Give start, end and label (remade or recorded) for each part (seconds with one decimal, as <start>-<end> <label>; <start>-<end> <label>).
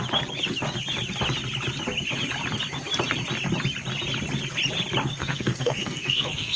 0.0-5.2 recorded; 5.2-6.6 remade